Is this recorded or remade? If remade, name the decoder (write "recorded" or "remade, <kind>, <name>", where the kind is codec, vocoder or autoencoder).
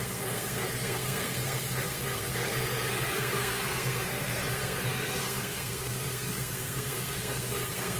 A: remade, codec, SNAC